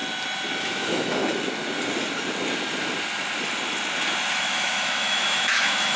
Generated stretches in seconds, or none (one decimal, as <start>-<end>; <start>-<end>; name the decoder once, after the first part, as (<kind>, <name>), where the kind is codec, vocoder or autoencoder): 0.6-1.2 (autoencoder, DAC-VAE); 4.3-6.0